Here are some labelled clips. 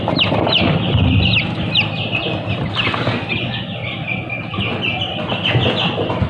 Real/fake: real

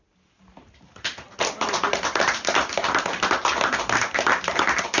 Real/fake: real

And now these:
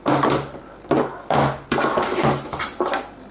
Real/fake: real